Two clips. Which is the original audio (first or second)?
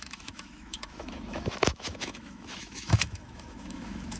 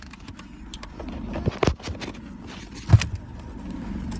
second